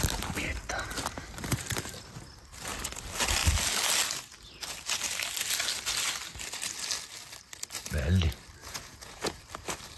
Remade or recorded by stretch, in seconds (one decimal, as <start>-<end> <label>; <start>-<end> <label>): 0.0-8.6 recorded; 8.6-9.4 remade; 9.4-10.0 recorded